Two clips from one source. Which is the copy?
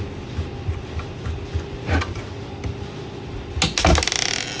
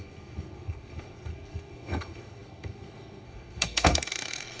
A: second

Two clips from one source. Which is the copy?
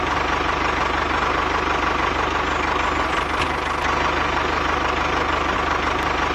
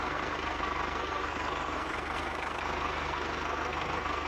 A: second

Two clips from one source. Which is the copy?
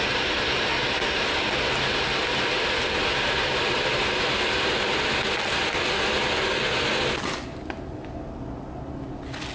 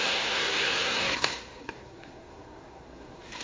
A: second